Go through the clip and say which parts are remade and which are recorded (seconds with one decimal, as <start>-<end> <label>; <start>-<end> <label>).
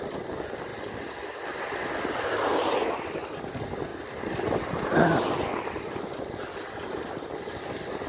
0.0-8.1 recorded